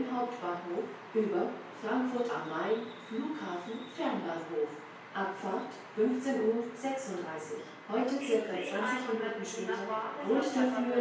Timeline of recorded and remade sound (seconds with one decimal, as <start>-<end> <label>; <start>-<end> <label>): 0.0-8.0 recorded; 8.0-8.8 remade; 8.8-11.0 recorded